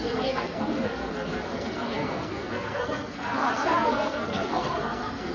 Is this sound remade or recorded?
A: remade